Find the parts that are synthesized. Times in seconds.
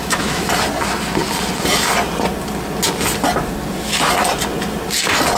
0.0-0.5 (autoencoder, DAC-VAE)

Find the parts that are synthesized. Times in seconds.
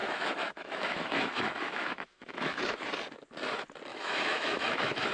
0.0-2.6 (autoencoder, DAC-VAE); 3.9-5.1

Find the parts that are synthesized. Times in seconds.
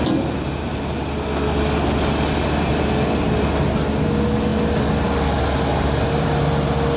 none